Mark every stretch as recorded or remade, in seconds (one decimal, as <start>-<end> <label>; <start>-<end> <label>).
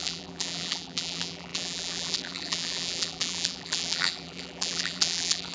0.0-5.5 remade